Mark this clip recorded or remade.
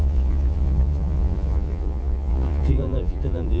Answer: remade